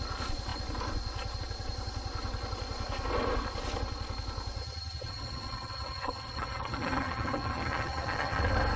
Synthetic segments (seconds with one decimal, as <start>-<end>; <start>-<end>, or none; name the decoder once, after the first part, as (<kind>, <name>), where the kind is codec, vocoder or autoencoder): 4.6-8.4 (vocoder, HiFi-GAN)